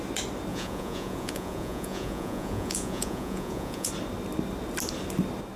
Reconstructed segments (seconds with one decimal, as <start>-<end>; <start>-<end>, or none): 0.5-3.9